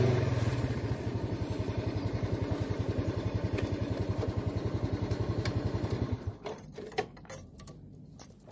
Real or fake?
fake